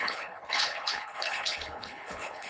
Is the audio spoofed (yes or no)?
yes